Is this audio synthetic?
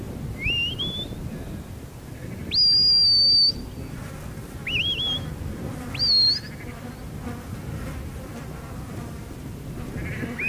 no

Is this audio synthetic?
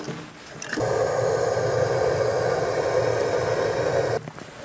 no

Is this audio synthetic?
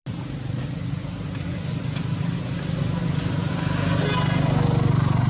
no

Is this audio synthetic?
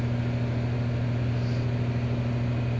no